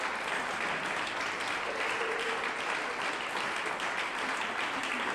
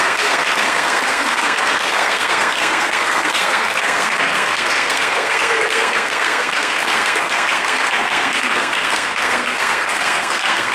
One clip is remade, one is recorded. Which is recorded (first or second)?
first